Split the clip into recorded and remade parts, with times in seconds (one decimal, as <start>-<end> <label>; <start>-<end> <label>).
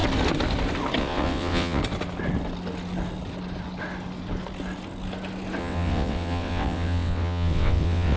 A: 0.0-1.0 recorded; 1.0-1.8 remade; 1.8-5.6 recorded; 5.6-8.2 remade